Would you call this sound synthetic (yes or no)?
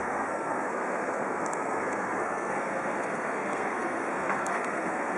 yes